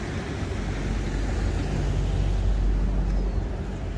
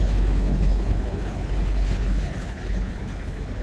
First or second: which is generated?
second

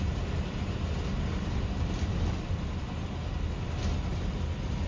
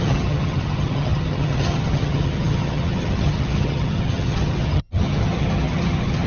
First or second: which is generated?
second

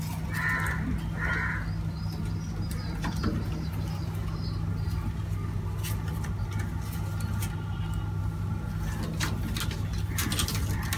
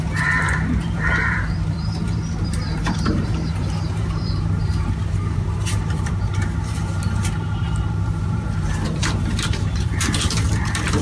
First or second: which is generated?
second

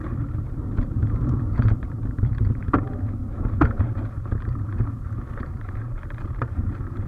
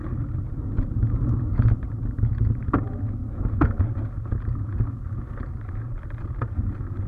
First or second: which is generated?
first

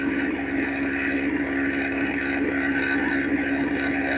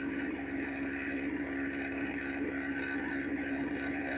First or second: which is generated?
second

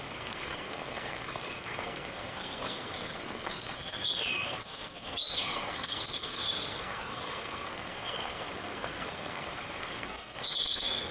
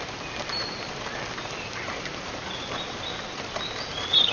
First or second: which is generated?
first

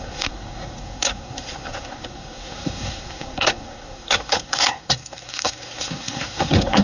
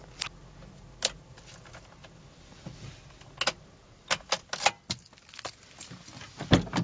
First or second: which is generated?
first